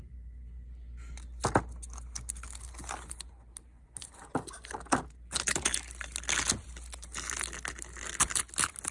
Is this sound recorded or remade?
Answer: recorded